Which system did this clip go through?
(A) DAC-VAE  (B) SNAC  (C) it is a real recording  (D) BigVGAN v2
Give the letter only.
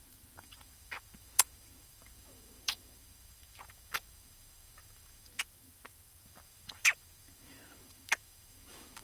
A